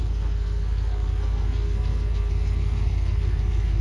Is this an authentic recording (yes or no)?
no